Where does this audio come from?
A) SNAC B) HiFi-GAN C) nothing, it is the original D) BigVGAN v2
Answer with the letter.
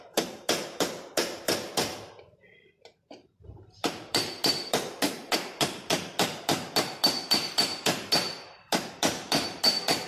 D